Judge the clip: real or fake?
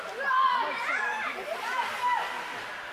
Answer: real